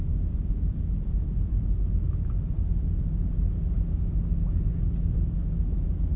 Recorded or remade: recorded